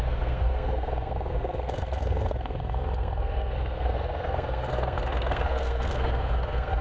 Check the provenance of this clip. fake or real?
fake